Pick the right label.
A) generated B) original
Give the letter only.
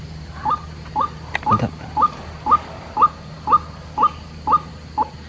B